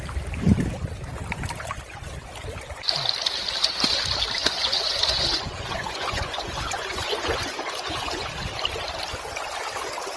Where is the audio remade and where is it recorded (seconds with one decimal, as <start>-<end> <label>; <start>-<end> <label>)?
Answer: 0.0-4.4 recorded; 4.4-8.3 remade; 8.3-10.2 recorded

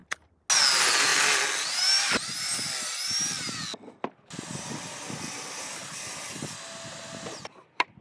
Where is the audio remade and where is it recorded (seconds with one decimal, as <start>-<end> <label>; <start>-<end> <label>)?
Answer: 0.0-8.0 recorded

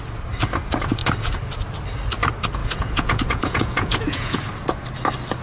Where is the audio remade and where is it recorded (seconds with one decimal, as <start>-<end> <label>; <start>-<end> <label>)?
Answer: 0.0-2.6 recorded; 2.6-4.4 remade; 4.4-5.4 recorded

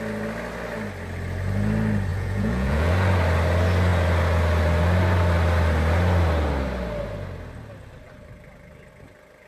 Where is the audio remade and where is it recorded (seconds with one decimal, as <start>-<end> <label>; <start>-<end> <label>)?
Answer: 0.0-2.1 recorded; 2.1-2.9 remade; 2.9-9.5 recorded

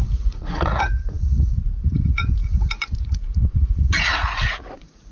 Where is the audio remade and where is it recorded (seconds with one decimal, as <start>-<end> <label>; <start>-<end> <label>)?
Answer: 0.0-5.1 remade

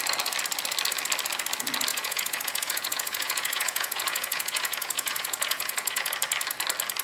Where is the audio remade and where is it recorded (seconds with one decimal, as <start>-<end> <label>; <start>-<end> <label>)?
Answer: 0.0-1.9 recorded; 1.9-6.1 remade; 6.1-7.0 recorded

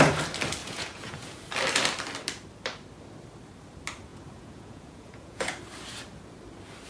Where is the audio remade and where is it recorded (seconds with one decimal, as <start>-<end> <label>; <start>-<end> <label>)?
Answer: 0.0-0.6 recorded; 0.6-1.4 remade; 1.4-4.1 recorded; 4.1-5.6 remade; 5.6-6.9 recorded